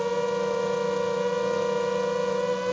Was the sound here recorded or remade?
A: recorded